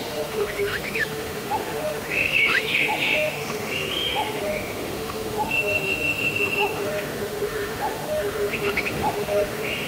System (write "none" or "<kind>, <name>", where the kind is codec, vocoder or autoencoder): autoencoder, DAC-VAE